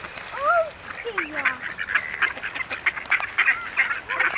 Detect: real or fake real